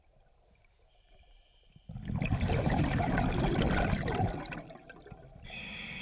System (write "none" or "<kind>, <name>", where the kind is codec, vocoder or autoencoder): none